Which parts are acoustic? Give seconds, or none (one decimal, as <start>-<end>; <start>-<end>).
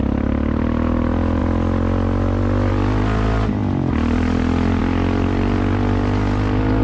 0.0-6.8